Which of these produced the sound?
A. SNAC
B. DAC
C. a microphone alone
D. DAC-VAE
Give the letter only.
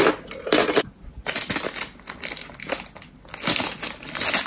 C